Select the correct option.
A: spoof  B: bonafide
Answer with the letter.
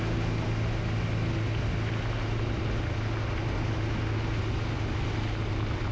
B